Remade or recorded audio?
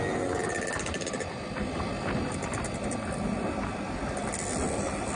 recorded